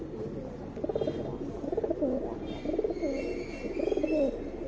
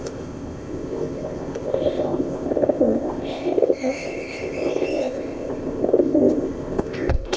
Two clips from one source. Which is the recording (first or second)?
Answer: first